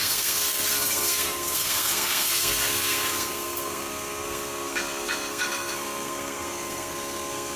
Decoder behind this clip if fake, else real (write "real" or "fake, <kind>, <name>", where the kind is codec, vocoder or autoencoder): fake, codec, SNAC